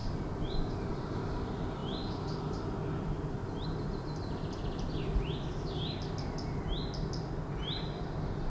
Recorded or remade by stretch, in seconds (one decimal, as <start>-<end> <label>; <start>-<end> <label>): 0.0-8.5 recorded